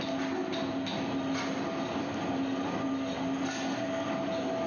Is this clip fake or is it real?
real